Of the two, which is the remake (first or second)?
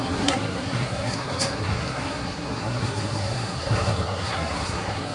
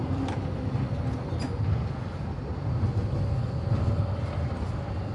first